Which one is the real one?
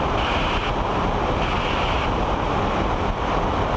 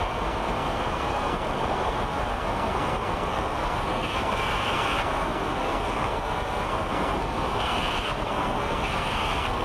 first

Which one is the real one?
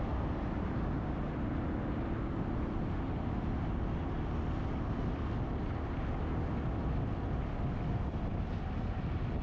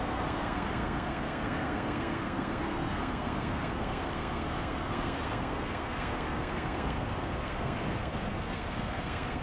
first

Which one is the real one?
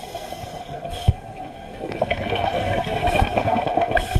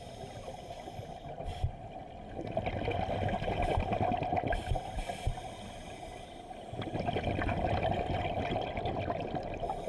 second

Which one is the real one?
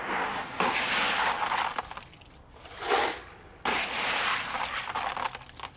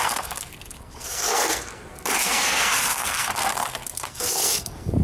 first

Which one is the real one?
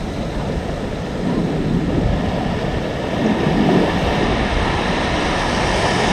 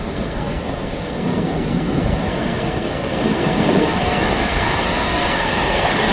first